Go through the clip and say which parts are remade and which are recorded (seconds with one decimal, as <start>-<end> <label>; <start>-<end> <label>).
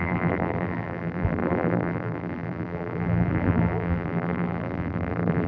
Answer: 0.0-5.5 remade